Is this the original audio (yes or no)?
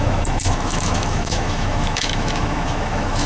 no